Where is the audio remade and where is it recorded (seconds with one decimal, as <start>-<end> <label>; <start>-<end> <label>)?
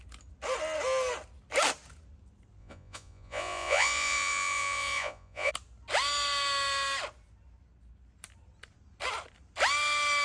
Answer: 0.0-2.6 recorded; 2.6-5.5 remade; 5.5-10.2 recorded